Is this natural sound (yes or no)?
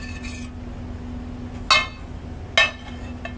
yes